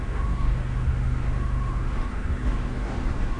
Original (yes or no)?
no